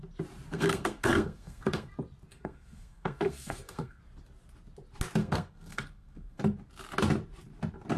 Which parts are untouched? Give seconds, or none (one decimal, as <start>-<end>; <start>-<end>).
0.0-0.5; 1.9-2.3; 4.0-5.2; 6.4-8.0